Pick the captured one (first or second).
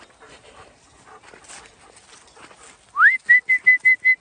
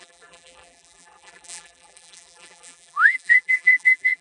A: first